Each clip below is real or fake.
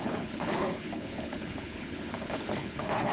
fake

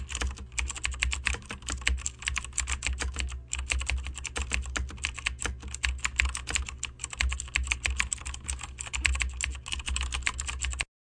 real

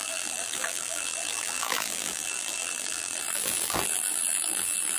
fake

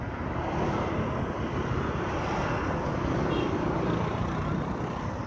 fake